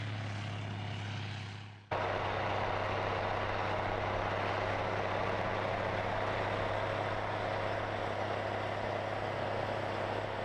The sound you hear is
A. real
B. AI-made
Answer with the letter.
A